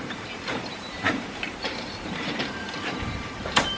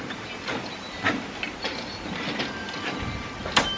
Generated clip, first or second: first